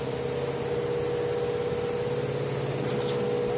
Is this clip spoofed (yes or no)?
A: no